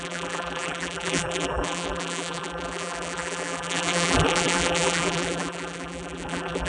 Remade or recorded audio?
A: remade